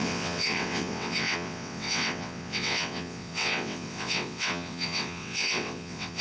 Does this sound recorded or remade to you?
remade